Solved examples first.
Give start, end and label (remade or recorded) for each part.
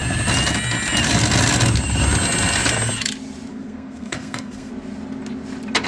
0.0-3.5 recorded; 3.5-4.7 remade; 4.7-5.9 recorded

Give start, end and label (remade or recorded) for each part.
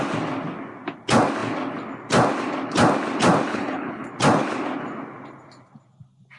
0.0-3.5 recorded; 3.5-4.1 remade; 4.1-6.4 recorded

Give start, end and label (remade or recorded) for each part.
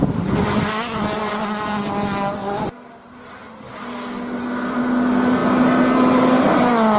0.0-7.0 recorded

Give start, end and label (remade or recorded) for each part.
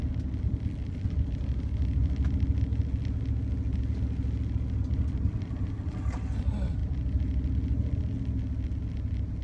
0.0-9.4 recorded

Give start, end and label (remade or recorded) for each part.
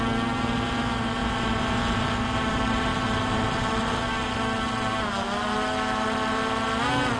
0.0-7.2 recorded